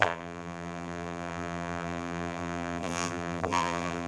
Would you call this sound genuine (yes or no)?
no